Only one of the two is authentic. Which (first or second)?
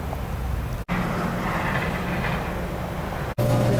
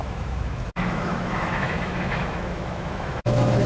first